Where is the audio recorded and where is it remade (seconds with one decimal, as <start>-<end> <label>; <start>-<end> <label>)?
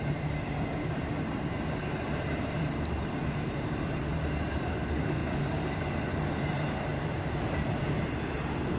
0.0-8.8 remade